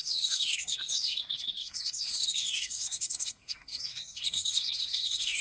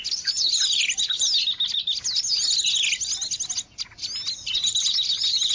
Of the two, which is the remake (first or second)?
first